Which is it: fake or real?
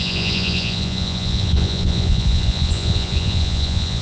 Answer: fake